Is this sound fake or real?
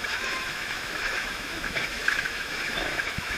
fake